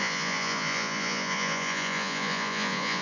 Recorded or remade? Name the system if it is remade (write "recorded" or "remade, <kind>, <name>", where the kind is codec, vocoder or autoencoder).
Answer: remade, vocoder, Vocos